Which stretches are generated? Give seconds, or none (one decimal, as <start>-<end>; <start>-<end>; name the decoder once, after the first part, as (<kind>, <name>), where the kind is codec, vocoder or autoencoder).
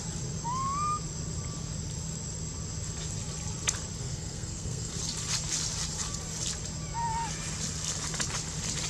4.0-5.0 (codec, SNAC)